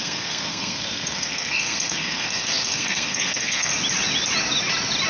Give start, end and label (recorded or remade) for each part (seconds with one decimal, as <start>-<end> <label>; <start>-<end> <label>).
0.0-3.7 remade; 3.7-5.1 recorded